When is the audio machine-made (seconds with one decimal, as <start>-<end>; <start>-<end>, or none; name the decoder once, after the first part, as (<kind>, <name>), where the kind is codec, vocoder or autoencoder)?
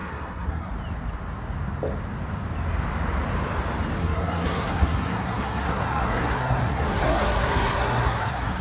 0.0-0.7 (codec, SNAC); 4.0-8.6